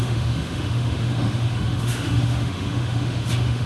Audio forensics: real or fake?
fake